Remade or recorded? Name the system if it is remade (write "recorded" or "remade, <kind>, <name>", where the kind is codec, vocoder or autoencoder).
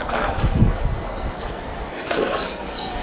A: remade, codec, SNAC